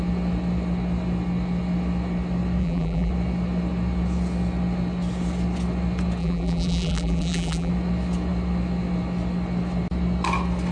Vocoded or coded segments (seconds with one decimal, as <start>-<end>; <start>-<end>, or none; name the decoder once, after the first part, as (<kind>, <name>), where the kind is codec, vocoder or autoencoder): 2.6-3.1 (vocoder, BigVGAN v2); 6.2-7.7